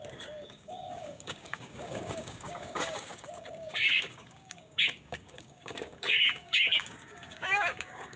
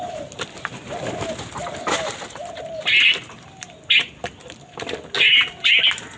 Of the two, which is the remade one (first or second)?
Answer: first